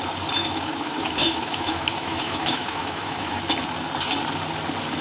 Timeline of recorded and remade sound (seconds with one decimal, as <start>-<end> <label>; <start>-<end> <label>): 0.0-0.4 recorded; 0.4-3.4 remade; 3.4-5.0 recorded